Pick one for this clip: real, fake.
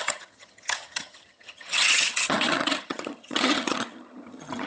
fake